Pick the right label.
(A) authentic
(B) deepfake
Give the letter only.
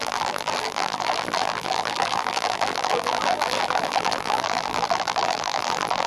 B